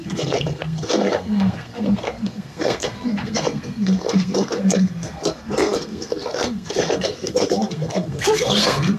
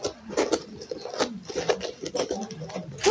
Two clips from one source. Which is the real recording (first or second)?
second